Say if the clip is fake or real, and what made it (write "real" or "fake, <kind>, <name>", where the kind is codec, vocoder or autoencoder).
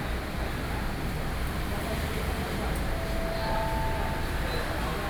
real